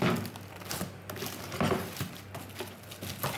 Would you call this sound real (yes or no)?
yes